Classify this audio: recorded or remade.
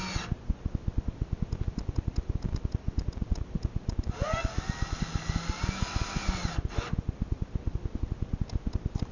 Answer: recorded